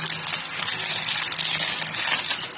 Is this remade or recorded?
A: recorded